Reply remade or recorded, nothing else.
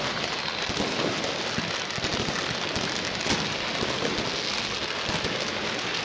recorded